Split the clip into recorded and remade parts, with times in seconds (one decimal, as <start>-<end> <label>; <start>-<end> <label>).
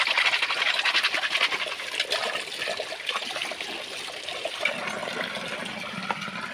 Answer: 0.0-2.2 recorded; 2.2-4.8 remade; 4.8-6.5 recorded